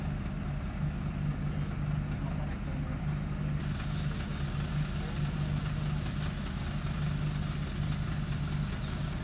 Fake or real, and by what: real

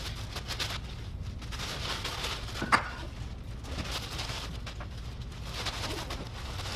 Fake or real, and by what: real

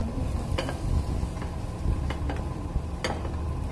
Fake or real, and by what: real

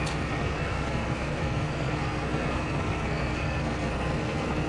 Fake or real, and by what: fake, codec, SNAC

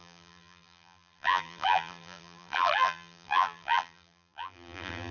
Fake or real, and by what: fake, vocoder, BigVGAN v2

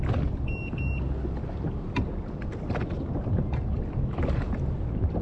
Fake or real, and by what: real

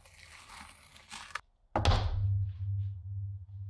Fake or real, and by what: real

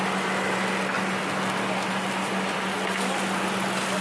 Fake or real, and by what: real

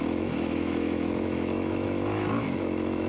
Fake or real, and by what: fake, autoencoder, DAC-VAE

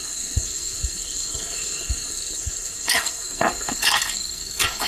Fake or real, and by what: fake, codec, SNAC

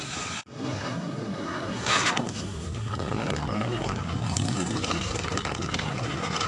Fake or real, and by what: fake, codec, SNAC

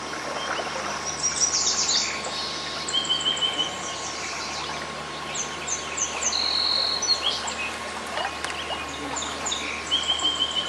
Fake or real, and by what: real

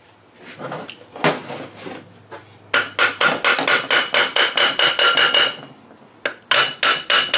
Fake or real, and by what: real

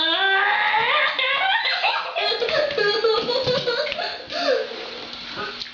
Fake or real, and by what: real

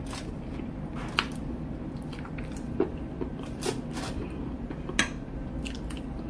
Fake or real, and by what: real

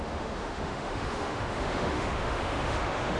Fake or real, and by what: fake, autoencoder, DAC-VAE